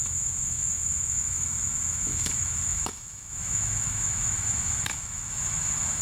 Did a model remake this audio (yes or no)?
yes